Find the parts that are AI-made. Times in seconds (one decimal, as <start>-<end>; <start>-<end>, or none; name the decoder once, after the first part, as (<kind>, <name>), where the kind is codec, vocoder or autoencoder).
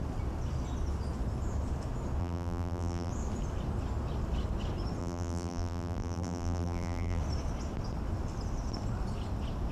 2.2-3.1 (vocoder, BigVGAN v2); 5.0-7.2